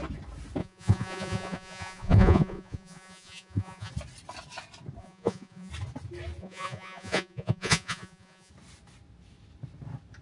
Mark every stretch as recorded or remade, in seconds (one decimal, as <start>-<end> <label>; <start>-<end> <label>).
0.0-0.6 recorded; 0.6-3.9 remade; 3.9-5.0 recorded; 5.0-5.7 remade; 5.7-6.4 recorded; 6.4-8.5 remade; 8.5-10.2 recorded